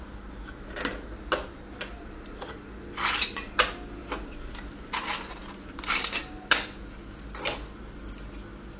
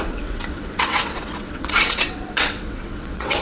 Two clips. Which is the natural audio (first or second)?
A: first